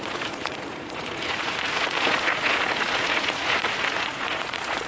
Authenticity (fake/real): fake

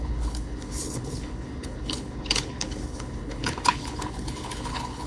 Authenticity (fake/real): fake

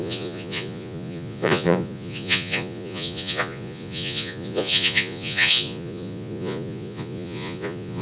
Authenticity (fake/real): fake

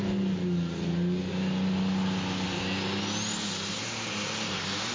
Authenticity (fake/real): real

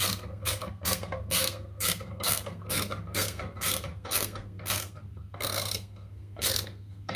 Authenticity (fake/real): fake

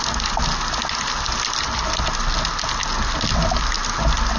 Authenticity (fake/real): real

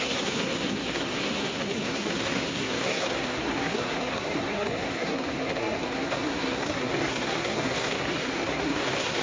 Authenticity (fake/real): fake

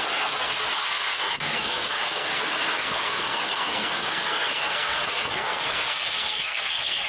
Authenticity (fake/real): fake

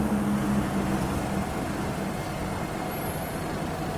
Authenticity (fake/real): real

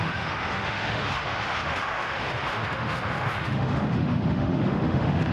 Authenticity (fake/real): fake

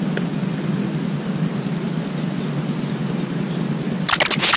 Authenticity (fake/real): real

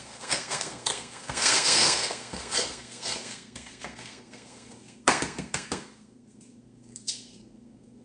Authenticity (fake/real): fake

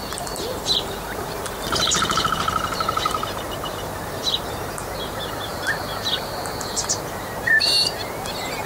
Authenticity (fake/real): fake